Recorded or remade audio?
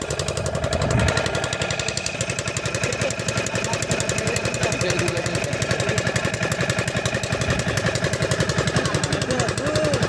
recorded